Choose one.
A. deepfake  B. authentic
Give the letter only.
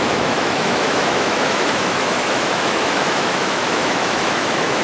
A